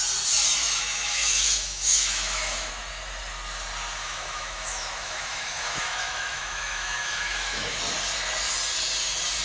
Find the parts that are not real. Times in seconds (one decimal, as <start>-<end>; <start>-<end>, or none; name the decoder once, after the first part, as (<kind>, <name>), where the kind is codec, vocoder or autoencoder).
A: 0.6-2.7 (autoencoder, DAC-VAE); 4.0-7.8

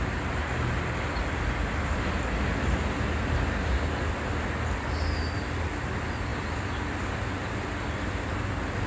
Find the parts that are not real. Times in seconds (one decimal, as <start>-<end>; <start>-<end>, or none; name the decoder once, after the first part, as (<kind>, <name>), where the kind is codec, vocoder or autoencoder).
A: none

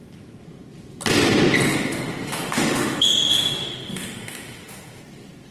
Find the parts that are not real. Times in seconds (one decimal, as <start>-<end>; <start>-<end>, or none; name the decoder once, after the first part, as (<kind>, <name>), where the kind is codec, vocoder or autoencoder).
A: 1.7-5.0 (autoencoder, DAC-VAE)